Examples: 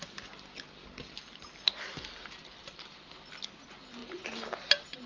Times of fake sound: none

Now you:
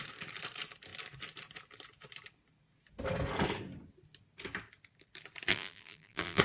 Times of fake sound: 5.5-6.4 (vocoder, BigVGAN v2)

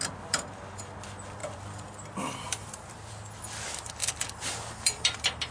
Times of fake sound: 1.4-3.1 (vocoder, BigVGAN v2); 4.0-4.6